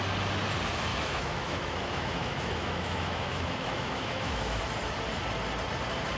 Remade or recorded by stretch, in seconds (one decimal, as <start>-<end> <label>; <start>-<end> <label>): 0.0-0.9 recorded; 0.9-4.6 remade; 4.6-6.2 recorded